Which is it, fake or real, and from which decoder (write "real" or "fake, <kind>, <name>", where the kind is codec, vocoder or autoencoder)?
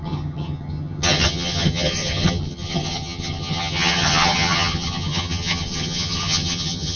fake, vocoder, HiFi-GAN